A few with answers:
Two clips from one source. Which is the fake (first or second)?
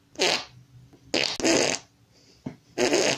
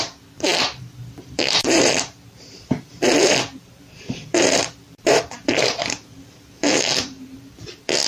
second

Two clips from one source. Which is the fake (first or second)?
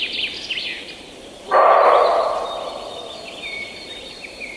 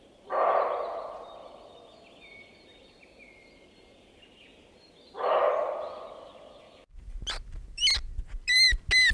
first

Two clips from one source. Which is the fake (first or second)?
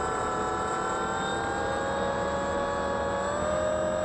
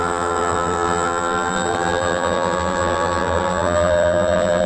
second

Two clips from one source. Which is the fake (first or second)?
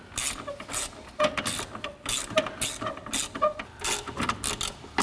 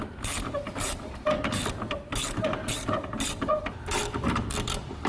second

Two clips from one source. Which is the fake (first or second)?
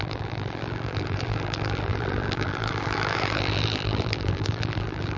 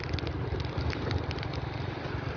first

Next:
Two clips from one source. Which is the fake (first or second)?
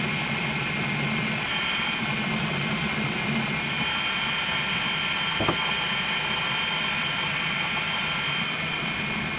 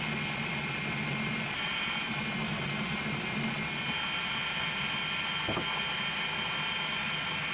first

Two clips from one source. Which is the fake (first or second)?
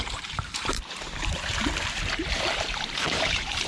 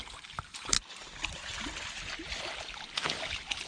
first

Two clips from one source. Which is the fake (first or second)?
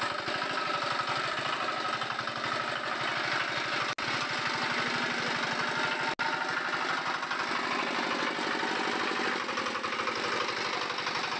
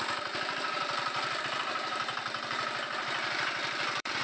second